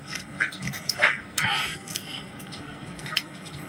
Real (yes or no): no